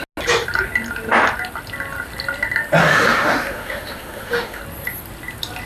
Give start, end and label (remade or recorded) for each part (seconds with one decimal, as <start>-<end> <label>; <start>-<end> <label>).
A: 0.0-2.8 recorded; 2.8-4.6 remade; 4.6-5.7 recorded